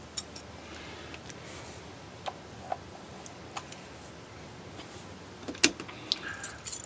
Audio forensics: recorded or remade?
recorded